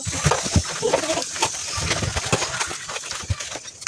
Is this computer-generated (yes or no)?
no